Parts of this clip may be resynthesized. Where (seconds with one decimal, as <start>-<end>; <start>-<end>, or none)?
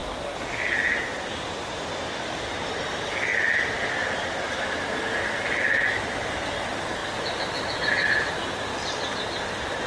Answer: none